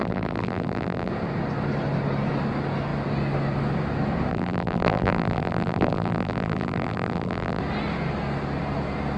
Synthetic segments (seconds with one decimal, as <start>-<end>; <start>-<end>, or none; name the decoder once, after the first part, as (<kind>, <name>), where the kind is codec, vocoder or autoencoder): 0.0-1.1 (vocoder, BigVGAN v2); 4.3-7.6